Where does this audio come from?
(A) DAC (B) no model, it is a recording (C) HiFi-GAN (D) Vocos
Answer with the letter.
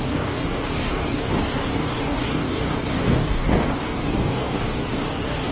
A